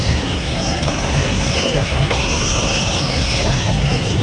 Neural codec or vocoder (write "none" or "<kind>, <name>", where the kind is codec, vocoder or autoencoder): codec, SNAC